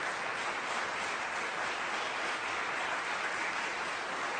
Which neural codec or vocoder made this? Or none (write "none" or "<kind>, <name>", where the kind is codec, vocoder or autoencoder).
none